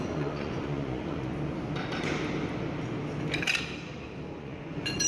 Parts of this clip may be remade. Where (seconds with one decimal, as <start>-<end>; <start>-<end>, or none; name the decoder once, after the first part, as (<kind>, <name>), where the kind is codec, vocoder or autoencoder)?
0.0-1.3 (vocoder, Vocos); 4.4-5.1